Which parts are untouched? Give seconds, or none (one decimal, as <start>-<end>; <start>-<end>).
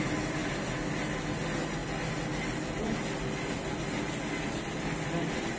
0.0-5.6